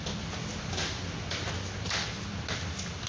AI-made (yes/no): no